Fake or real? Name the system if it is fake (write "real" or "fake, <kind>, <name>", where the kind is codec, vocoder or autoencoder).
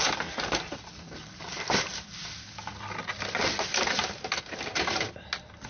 real